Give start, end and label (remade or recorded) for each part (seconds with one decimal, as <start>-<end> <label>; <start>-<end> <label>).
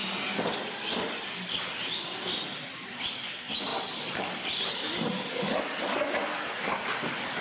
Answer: 0.0-7.4 recorded